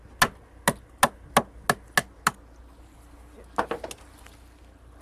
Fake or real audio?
real